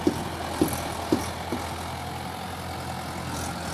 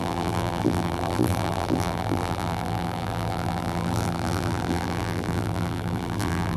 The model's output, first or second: second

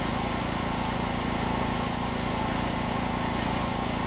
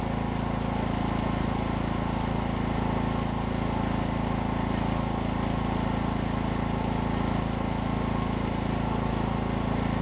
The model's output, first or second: first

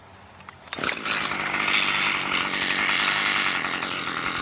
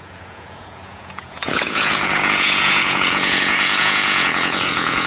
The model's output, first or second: second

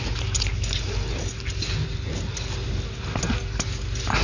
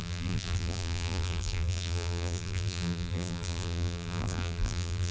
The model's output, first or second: second